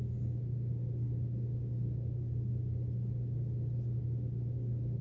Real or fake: real